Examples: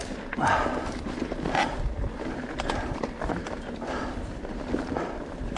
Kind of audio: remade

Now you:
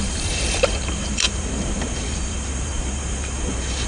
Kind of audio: remade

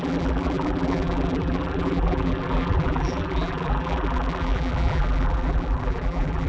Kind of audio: remade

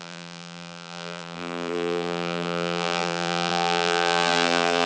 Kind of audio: remade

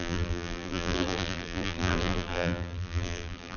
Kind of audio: remade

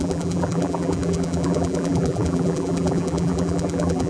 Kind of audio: remade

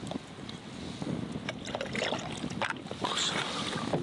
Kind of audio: recorded